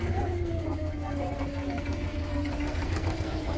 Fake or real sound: fake